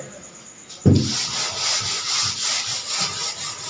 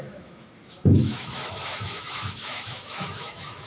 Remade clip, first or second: second